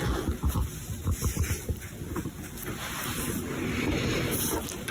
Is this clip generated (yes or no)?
no